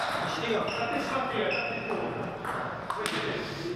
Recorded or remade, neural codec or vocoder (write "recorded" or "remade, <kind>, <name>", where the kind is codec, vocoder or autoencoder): recorded